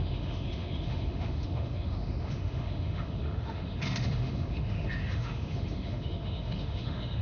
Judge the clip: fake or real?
fake